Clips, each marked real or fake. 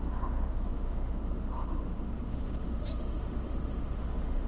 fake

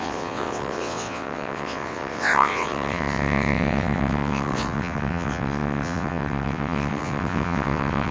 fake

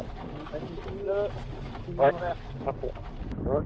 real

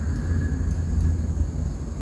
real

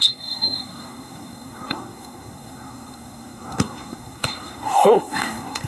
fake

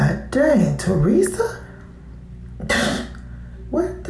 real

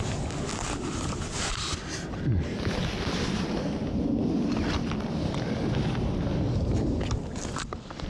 real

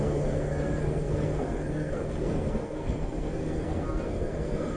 fake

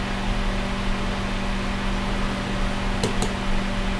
real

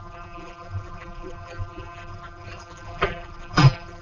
fake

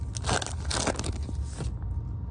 real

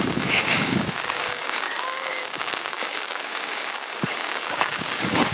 fake